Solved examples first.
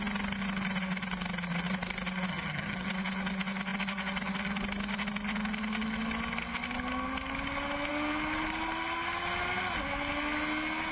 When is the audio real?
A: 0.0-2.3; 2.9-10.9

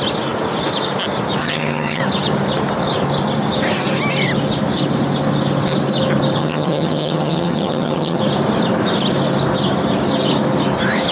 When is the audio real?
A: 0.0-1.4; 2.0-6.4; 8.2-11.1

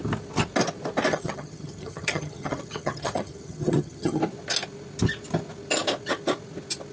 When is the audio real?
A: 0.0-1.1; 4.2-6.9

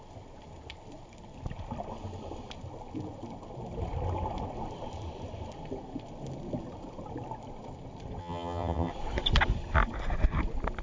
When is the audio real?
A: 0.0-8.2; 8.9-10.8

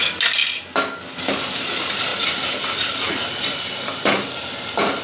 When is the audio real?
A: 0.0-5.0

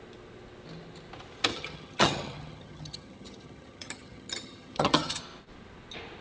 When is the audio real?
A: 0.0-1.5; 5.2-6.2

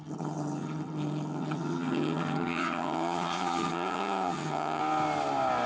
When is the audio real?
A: 4.8-5.7

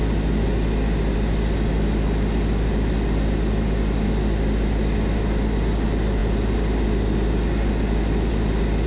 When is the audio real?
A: 0.0-8.9